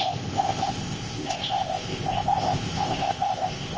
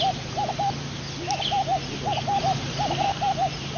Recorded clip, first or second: second